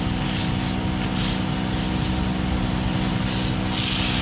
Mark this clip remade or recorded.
recorded